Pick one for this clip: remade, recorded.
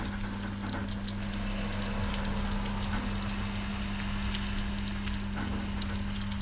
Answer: recorded